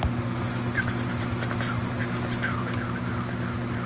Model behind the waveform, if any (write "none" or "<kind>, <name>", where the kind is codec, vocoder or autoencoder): none